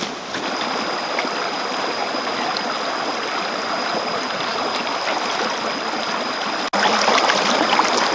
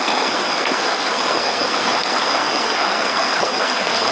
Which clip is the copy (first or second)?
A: second